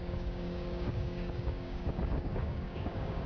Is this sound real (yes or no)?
no